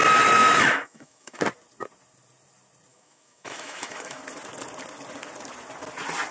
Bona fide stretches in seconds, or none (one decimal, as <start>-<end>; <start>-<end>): 0.0-0.4; 1.4-2.9; 4.2-6.3